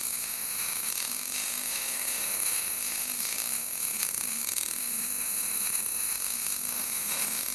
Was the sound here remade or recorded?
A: remade